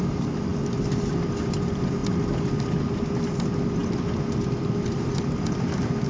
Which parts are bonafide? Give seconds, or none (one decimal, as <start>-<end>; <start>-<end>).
0.0-6.1